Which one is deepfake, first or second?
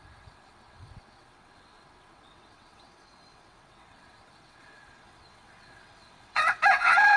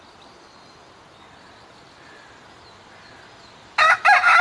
first